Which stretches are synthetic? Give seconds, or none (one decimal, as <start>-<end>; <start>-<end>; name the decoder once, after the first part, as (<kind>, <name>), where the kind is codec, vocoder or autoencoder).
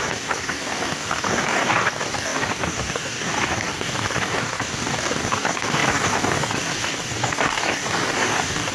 0.0-8.7 (codec, DAC)